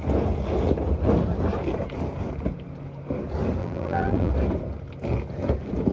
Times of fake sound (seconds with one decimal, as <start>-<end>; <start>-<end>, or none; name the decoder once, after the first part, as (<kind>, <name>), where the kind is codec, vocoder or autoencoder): 3.6-4.3 (vocoder, BigVGAN v2)